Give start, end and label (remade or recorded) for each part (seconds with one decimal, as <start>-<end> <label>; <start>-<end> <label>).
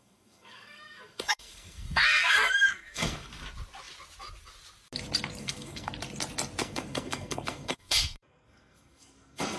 0.0-3.4 remade; 3.4-5.4 recorded; 5.4-5.9 remade; 5.9-6.6 recorded; 6.6-9.6 remade